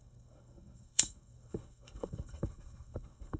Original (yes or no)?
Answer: no